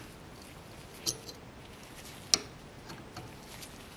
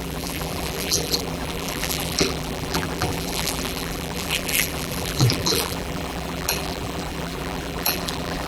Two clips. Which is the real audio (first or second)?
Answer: first